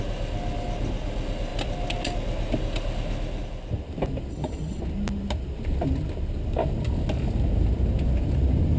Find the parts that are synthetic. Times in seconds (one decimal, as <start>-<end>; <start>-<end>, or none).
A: 4.3-4.8